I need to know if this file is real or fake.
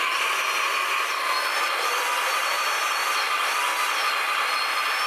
real